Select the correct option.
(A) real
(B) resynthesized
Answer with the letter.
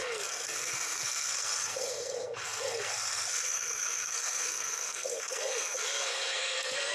B